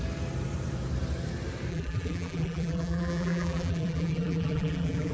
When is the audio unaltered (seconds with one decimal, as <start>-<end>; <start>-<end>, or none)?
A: 0.0-1.7